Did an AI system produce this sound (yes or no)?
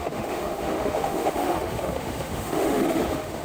yes